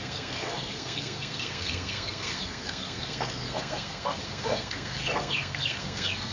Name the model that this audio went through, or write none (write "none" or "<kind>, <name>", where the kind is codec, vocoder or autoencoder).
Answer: codec, SNAC